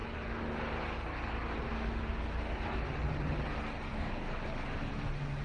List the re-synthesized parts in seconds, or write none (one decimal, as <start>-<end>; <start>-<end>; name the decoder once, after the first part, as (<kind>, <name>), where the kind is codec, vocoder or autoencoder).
3.9-4.9 (codec, DAC)